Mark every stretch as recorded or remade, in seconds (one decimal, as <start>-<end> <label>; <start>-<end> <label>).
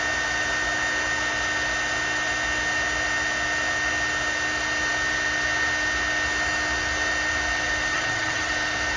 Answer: 0.0-7.9 recorded; 7.9-8.5 remade; 8.5-9.0 recorded